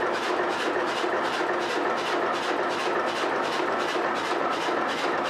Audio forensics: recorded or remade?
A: recorded